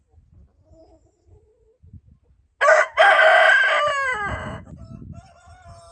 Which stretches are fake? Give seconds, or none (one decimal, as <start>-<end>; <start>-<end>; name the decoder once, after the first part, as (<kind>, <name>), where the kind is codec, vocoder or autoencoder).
none